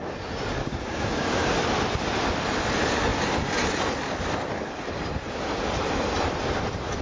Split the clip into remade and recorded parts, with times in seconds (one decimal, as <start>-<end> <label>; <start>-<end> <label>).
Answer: 0.0-0.6 recorded; 0.6-1.5 remade; 1.5-7.0 recorded